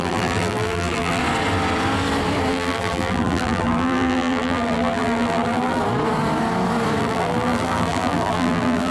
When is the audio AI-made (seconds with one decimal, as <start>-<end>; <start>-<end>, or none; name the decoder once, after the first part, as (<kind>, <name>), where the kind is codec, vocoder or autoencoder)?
0.0-1.2 (vocoder, BigVGAN v2); 2.5-5.8; 7.0-8.9